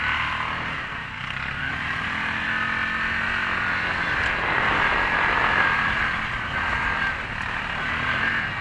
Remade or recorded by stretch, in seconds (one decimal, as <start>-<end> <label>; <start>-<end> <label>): 0.0-0.9 recorded; 0.9-1.7 remade; 1.7-8.6 recorded